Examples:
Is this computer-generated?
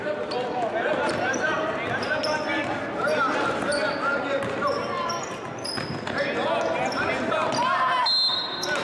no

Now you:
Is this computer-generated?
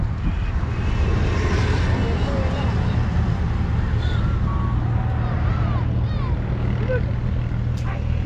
no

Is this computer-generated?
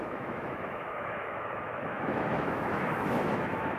yes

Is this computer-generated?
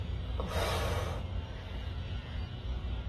no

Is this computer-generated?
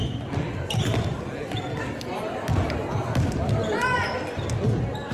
no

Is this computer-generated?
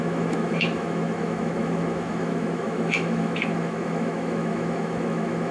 yes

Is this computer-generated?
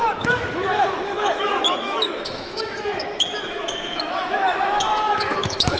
yes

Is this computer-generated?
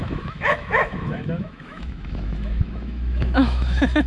yes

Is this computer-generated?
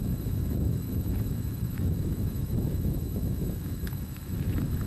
yes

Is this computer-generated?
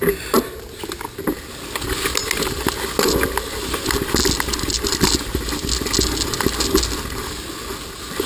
no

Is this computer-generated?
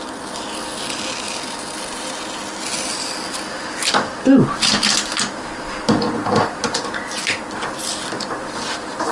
no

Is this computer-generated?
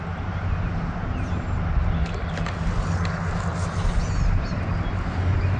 no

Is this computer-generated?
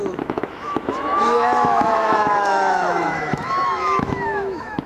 yes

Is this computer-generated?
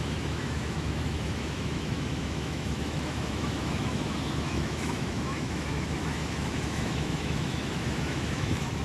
yes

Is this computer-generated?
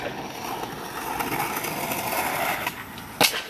no